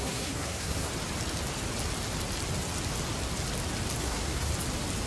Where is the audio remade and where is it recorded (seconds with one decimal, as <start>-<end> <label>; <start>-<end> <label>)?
0.0-0.9 remade; 0.9-4.0 recorded; 4.0-4.5 remade; 4.5-5.1 recorded